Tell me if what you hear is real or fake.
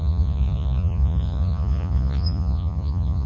fake